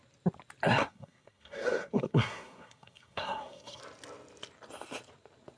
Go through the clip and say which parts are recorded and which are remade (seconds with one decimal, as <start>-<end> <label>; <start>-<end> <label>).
0.0-0.8 recorded; 0.8-3.8 remade; 3.8-5.6 recorded